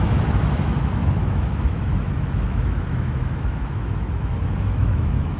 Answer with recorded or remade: remade